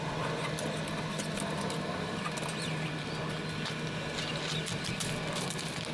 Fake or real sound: real